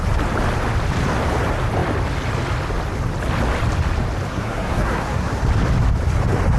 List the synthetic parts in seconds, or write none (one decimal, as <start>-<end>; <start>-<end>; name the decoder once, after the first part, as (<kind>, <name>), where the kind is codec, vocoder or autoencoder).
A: 4.3-5.4 (codec, SNAC)